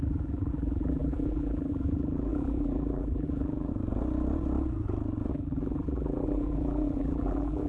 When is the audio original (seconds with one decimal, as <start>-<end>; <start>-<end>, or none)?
3.7-5.3